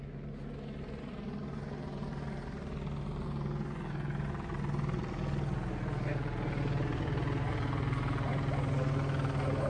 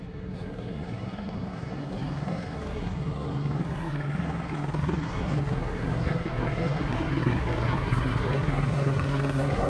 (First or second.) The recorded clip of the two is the first